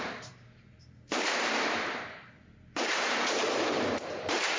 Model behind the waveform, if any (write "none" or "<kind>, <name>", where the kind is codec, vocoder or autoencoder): vocoder, BigVGAN v2